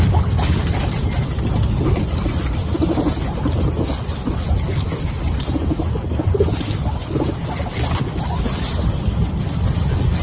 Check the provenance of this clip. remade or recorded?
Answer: recorded